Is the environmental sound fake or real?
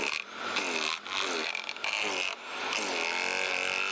real